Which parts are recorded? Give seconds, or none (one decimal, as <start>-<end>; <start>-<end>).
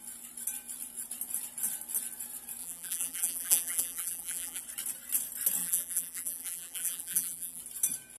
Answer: 0.0-2.6; 4.6-5.6; 7.6-8.2